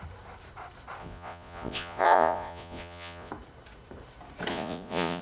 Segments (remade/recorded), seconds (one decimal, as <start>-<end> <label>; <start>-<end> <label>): 0.0-1.0 recorded; 1.0-3.3 remade; 3.3-4.5 recorded; 4.5-5.2 remade